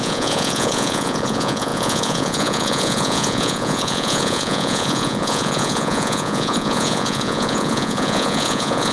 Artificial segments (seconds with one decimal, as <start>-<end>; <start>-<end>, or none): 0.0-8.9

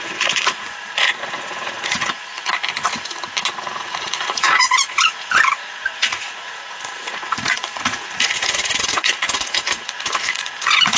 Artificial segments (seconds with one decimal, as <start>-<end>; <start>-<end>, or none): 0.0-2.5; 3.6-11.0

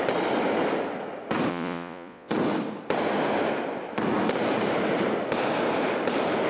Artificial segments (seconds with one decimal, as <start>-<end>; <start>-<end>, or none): 1.5-2.3